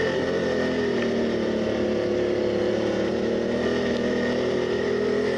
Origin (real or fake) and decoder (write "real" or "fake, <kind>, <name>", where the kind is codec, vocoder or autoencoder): real